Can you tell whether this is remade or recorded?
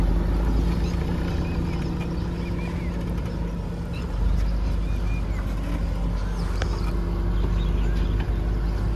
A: recorded